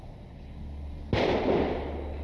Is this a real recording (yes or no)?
no